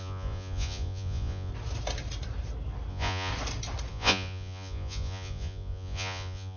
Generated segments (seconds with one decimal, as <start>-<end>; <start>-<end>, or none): 0.0-1.5; 2.9-3.3; 3.9-6.6